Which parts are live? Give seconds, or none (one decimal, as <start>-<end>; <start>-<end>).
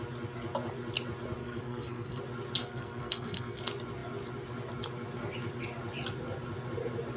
0.0-1.4; 2.2-2.6; 3.6-7.2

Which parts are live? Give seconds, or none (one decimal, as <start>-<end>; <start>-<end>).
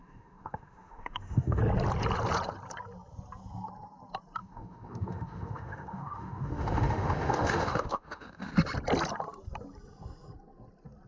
1.6-4.4; 8.5-11.1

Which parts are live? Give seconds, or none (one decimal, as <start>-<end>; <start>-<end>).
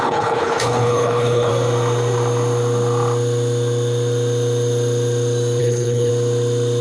1.5-5.6; 6.1-6.8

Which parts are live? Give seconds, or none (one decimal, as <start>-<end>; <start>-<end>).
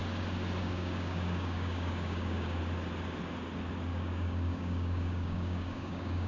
0.0-0.6; 2.6-3.9